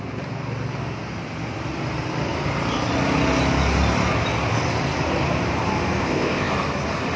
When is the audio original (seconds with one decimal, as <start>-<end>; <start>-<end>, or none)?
0.0-6.0; 6.5-7.2